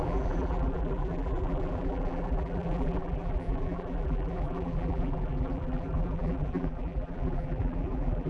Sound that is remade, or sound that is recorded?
remade